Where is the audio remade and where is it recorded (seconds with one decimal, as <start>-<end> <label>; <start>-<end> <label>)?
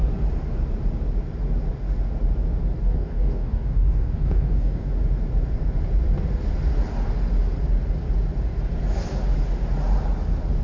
0.0-2.8 recorded; 2.8-4.9 remade; 4.9-10.6 recorded